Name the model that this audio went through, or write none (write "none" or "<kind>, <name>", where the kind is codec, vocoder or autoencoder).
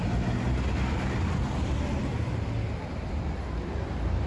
vocoder, BigVGAN v2